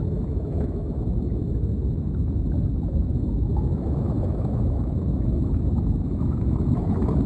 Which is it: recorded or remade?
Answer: remade